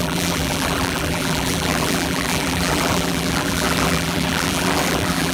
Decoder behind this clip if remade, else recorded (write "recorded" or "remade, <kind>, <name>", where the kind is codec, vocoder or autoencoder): remade, vocoder, BigVGAN v2